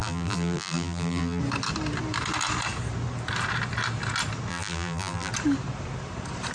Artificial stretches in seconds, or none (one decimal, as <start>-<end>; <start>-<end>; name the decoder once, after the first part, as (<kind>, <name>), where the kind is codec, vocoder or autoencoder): 0.0-1.4 (vocoder, BigVGAN v2); 4.5-5.3